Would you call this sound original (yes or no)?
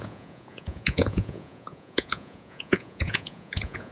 no